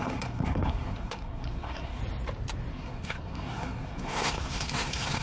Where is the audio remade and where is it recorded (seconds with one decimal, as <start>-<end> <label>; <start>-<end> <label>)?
0.0-2.0 remade; 2.0-2.7 recorded; 2.7-5.2 remade